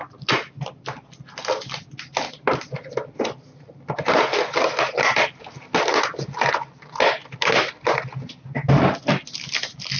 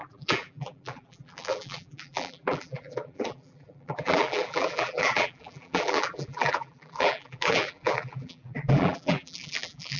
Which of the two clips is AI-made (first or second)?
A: second